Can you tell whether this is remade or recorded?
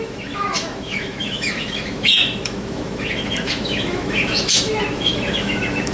remade